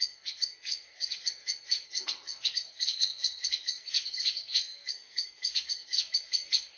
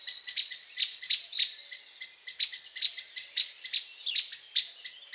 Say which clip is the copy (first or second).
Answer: first